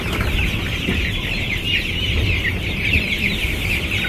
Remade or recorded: remade